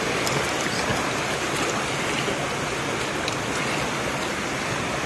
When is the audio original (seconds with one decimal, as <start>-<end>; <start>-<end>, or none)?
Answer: 0.0-5.1